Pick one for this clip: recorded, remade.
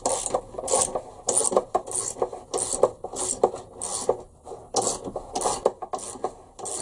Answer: recorded